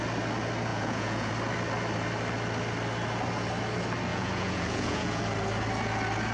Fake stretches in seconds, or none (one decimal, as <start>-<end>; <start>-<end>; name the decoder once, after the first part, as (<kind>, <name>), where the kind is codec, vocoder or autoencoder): 0.7-1.3 (vocoder, Vocos); 4.1-5.2